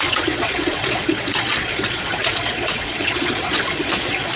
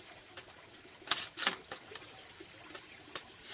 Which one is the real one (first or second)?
second